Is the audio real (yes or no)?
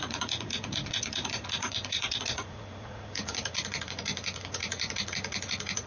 no